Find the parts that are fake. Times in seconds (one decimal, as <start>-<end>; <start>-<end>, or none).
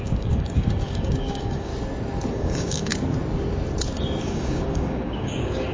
0.0-1.7; 2.3-2.9; 4.2-5.7